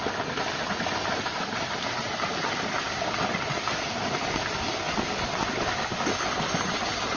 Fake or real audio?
fake